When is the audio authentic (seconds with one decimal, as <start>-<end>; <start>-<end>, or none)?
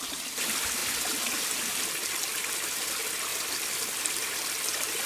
0.0-5.1